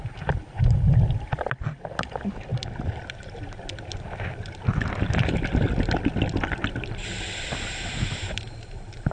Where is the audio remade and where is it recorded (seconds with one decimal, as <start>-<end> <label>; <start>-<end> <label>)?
0.0-9.1 recorded